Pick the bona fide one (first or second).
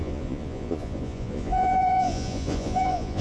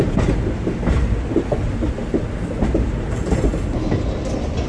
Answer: second